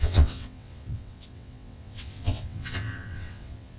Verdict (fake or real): fake